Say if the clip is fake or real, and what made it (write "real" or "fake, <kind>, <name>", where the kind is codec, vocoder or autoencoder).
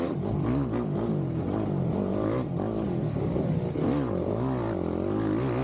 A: real